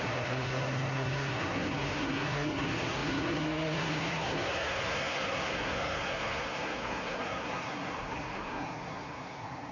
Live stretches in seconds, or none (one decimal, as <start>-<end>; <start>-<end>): none